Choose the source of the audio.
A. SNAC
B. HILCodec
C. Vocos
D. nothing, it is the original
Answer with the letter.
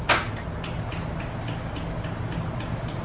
D